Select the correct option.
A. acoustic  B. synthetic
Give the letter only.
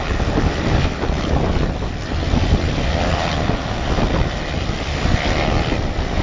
A